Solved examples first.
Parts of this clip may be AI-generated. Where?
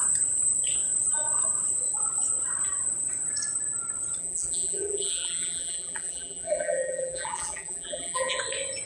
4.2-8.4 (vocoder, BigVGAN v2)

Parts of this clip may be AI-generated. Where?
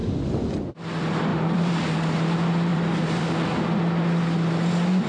1.3-2.3 (vocoder, BigVGAN v2); 2.7-3.2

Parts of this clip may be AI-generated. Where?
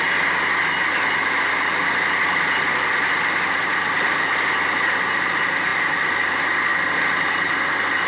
none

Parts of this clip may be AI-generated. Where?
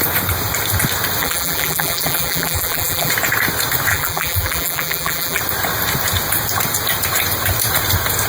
1.2-3.1 (vocoder, BigVGAN v2); 3.9-5.4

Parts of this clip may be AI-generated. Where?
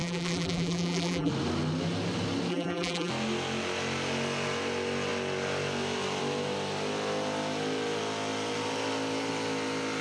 0.0-1.3 (vocoder, BigVGAN v2); 2.5-3.1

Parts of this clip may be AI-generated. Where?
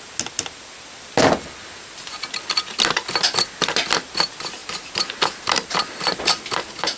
none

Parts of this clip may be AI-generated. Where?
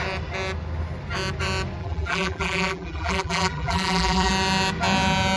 1.8-4.3 (vocoder, BigVGAN v2)